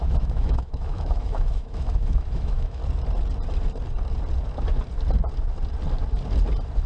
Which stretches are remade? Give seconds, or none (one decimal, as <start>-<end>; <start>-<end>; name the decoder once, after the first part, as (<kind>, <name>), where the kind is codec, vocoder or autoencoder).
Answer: 0.0-2.8 (autoencoder, DAC-VAE)